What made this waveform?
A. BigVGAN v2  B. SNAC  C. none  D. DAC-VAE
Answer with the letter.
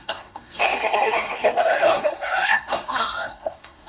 B